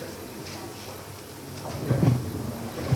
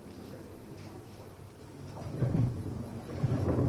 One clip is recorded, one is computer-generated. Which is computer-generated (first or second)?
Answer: second